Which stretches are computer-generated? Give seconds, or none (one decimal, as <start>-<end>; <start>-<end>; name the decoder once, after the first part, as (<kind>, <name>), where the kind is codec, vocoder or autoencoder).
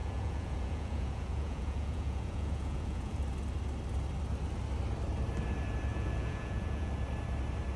0.0-3.2 (vocoder, Vocos); 5.9-6.9